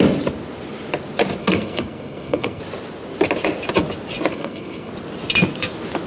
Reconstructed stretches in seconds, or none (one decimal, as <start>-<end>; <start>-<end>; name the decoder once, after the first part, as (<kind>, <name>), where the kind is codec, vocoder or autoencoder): 1.4-2.6 (codec, SNAC); 4.3-4.9